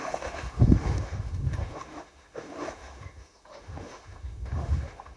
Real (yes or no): no